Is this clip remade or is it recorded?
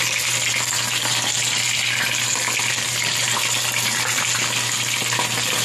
recorded